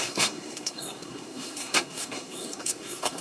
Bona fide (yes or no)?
no